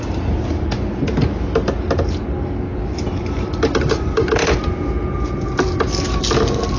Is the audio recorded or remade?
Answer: recorded